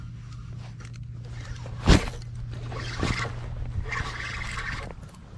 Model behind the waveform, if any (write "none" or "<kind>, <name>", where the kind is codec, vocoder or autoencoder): none